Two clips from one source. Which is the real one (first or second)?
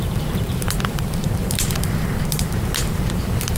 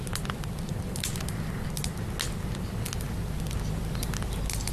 second